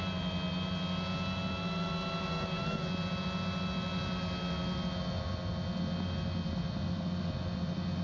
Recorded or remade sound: recorded